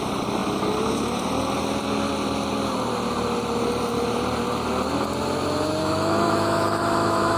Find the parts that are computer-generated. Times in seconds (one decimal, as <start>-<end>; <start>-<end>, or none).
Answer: 5.8-7.4

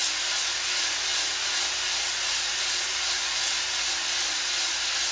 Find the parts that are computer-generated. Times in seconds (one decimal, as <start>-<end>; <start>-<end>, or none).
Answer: none